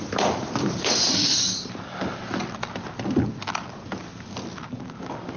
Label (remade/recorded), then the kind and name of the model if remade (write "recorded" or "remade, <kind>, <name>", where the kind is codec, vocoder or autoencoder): recorded